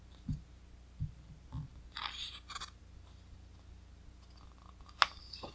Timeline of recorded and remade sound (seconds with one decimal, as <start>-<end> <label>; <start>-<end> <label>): 0.0-5.5 recorded